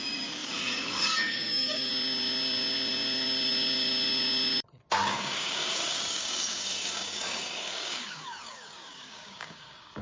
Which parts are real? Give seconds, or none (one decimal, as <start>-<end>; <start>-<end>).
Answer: 1.9-5.0